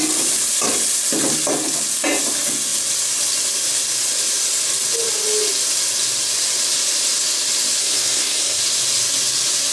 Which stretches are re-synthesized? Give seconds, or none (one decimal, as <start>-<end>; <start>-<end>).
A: 7.8-8.6